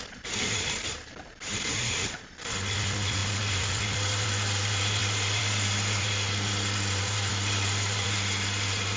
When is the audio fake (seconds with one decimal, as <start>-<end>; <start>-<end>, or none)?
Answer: 0.0-9.0